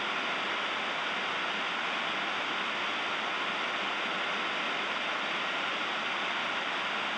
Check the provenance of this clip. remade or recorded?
recorded